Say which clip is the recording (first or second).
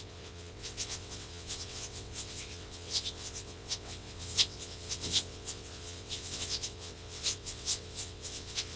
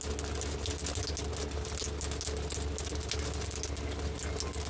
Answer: second